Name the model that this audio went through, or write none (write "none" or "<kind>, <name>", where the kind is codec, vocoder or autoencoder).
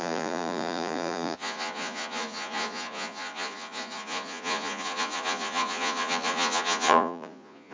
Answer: vocoder, Vocos